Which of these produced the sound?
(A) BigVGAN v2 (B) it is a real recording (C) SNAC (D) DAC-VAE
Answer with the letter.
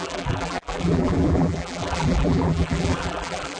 A